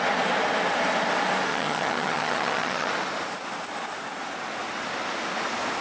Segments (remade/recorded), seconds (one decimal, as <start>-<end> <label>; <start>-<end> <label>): 0.0-1.5 recorded; 1.5-2.9 remade; 2.9-5.8 recorded